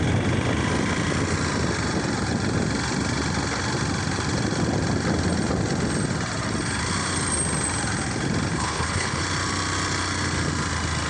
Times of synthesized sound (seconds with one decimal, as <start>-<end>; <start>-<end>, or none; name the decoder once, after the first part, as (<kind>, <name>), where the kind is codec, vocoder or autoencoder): 8.5-9.2 (codec, HILCodec)